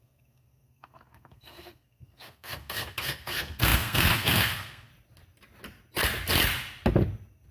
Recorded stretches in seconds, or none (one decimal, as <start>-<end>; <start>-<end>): 4.9-7.5